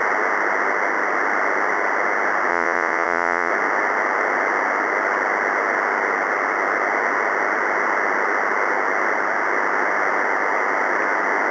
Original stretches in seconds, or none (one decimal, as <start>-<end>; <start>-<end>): 0.0-2.5; 3.5-11.5